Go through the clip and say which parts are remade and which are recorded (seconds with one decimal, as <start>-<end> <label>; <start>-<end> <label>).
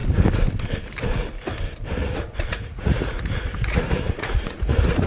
0.0-2.0 recorded; 2.0-5.1 remade